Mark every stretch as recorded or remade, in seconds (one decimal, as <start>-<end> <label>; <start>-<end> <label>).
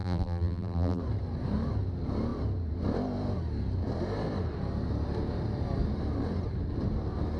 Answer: 0.0-1.0 remade; 1.0-7.4 recorded